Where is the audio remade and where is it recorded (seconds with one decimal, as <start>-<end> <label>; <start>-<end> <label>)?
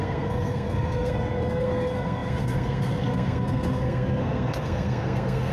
0.0-5.5 remade